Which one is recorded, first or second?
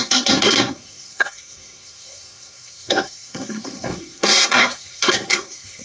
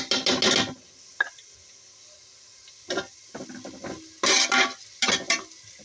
second